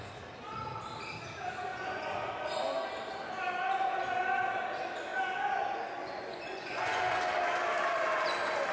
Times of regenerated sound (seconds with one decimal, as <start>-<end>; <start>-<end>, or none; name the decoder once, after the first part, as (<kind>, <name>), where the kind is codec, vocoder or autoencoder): 1.7-2.3 (vocoder, Vocos); 5.1-5.6; 6.0-7.2